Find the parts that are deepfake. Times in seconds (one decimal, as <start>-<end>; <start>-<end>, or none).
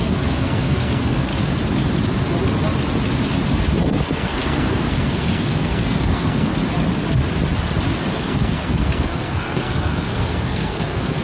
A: 0.0-1.3; 3.8-6.5; 8.1-11.2